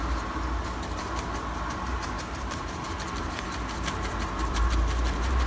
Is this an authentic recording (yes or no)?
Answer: no